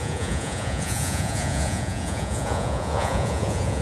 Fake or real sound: fake